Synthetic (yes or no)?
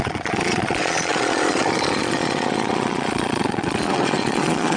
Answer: yes